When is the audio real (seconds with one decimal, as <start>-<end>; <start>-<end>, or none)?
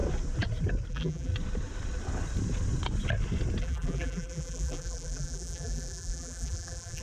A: 0.0-0.9; 1.3-3.6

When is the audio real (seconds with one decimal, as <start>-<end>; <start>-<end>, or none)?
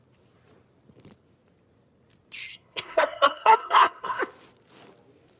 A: 0.0-2.5; 4.2-5.4